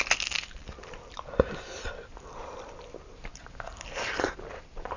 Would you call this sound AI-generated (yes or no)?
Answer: no